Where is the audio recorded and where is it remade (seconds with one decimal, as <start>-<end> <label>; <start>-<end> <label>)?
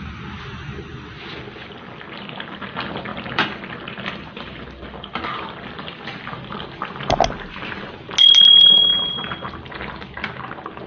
0.0-3.1 recorded; 3.1-5.6 remade; 5.6-8.9 recorded; 8.9-9.7 remade; 9.7-10.9 recorded